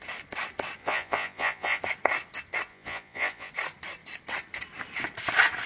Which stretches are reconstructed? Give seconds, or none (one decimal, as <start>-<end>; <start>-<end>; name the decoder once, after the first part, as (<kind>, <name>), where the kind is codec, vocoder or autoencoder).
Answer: 0.8-1.8 (vocoder, Vocos); 2.7-3.5